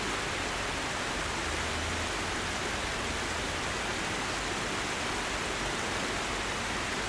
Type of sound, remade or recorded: recorded